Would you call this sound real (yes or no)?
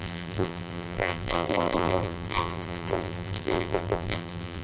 no